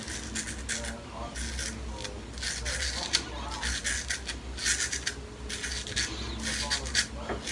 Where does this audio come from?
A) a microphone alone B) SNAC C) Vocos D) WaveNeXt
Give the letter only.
A